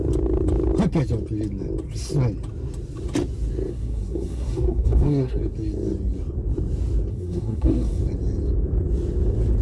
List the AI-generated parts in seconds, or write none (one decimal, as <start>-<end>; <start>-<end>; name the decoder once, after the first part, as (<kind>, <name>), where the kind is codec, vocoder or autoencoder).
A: 3.7-5.4 (codec, SNAC); 7.1-8.0

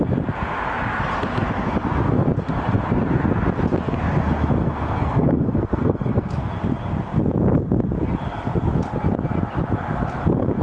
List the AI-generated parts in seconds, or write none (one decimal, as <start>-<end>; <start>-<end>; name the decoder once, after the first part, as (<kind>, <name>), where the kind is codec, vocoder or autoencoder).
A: 4.6-6.5 (codec, SNAC)